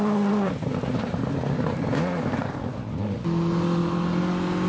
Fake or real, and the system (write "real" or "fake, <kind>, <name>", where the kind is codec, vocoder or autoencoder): real